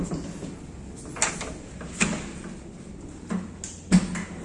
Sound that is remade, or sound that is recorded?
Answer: recorded